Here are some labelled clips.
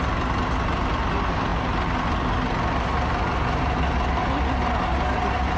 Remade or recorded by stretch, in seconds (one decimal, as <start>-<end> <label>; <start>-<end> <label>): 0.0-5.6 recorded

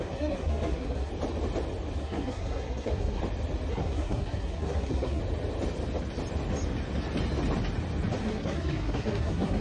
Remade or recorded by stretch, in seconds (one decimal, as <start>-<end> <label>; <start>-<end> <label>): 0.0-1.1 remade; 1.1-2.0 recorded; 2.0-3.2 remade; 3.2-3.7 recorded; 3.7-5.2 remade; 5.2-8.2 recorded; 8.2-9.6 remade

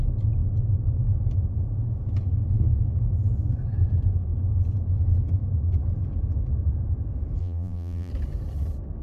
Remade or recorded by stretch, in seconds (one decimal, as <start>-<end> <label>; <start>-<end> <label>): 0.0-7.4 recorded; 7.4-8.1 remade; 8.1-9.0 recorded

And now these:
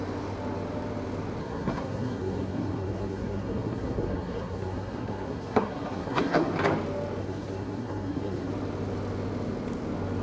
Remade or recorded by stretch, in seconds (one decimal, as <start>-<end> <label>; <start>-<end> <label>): 0.0-1.4 recorded; 1.4-6.5 remade; 6.5-7.2 recorded; 7.2-8.5 remade; 8.5-10.2 recorded